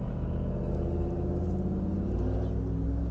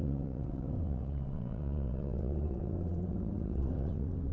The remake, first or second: second